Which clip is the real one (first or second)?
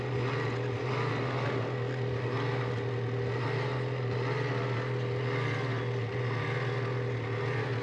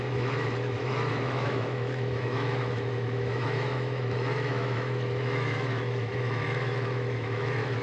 first